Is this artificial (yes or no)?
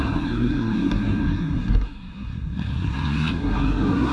yes